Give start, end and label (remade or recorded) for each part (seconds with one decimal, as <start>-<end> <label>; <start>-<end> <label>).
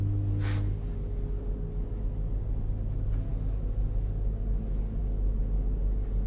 0.0-6.3 recorded